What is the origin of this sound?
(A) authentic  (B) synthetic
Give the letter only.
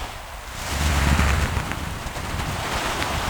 A